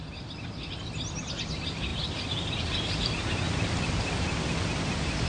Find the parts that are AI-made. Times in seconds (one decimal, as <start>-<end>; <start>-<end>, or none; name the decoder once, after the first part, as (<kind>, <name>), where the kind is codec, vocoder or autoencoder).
none